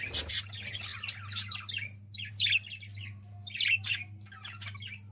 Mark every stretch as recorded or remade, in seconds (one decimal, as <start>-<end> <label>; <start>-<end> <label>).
0.0-5.1 recorded